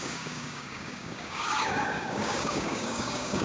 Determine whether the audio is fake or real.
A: fake